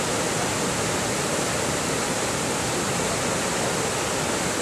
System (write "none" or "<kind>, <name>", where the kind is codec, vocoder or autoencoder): none